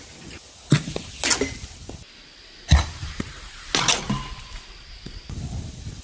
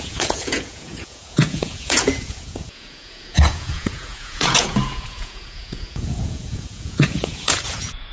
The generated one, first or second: second